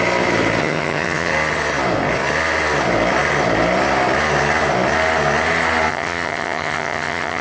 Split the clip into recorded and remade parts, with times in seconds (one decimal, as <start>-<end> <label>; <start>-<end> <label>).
0.0-0.6 recorded; 0.6-1.3 remade; 1.3-5.9 recorded; 5.9-7.4 remade